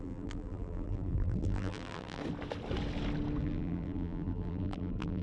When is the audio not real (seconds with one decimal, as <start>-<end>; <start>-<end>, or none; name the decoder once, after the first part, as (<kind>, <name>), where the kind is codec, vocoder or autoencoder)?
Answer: 0.0-2.2 (vocoder, BigVGAN v2); 3.4-5.2